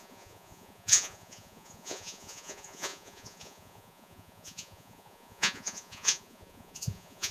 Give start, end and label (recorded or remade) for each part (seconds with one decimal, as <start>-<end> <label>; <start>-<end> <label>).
0.0-7.3 remade